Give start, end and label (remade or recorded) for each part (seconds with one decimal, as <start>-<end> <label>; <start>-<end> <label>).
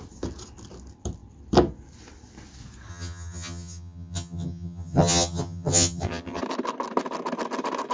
0.0-2.9 recorded; 2.9-6.4 remade; 6.4-7.9 recorded